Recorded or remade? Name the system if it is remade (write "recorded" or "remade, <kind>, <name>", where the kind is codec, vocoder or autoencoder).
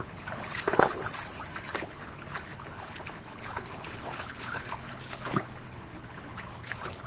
remade, codec, HILCodec